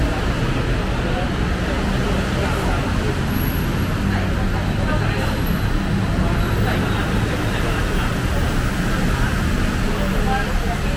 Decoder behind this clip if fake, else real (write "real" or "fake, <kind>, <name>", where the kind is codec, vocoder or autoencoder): real